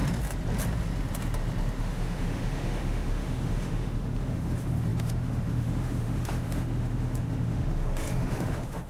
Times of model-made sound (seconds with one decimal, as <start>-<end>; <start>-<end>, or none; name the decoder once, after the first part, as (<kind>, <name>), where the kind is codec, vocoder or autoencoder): 1.8-8.9 (autoencoder, DAC-VAE)